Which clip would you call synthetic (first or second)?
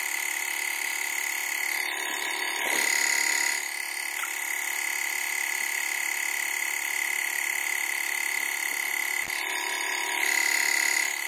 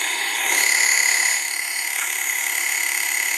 second